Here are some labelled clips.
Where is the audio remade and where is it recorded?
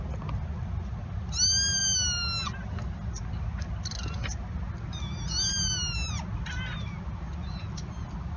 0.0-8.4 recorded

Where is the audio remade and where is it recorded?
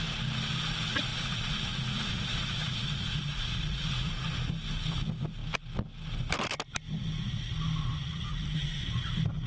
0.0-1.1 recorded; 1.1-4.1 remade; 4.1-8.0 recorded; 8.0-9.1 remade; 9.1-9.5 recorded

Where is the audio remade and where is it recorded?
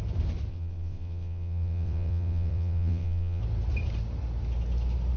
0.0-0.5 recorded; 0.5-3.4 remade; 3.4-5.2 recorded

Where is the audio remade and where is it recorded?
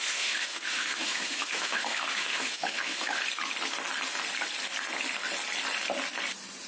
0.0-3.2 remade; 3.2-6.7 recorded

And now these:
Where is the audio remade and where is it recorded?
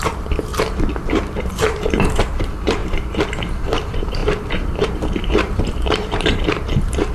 0.0-0.5 remade; 0.5-1.1 recorded; 1.1-7.1 remade